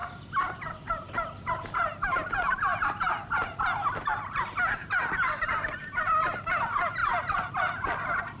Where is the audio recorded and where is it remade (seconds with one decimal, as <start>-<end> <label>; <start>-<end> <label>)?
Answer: 0.0-2.7 recorded; 2.7-3.6 remade; 3.6-7.0 recorded; 7.0-7.5 remade; 7.5-8.4 recorded